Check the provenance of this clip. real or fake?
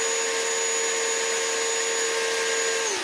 real